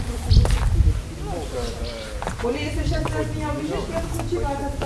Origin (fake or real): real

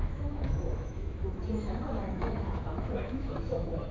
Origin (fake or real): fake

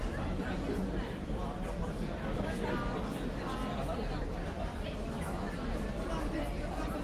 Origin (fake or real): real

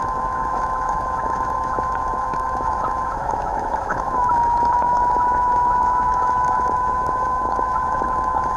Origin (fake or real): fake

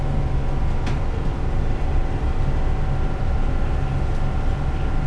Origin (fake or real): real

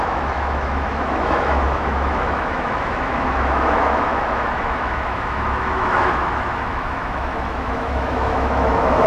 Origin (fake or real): fake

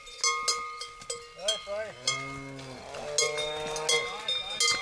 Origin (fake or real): real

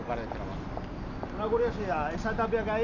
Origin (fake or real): real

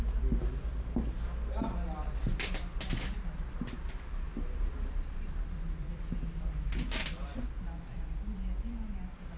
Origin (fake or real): real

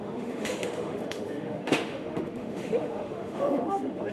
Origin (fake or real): fake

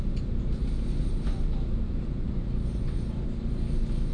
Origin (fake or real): real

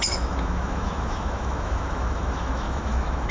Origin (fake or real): fake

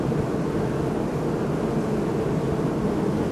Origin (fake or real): real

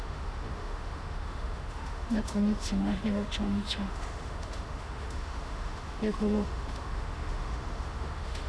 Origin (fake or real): fake